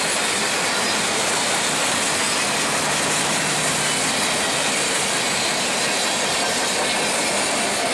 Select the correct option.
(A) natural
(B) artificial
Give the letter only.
A